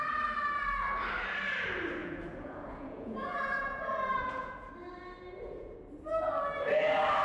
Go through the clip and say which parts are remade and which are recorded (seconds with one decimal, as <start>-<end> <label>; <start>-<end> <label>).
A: 0.0-2.0 recorded; 2.0-4.7 remade; 4.7-7.2 recorded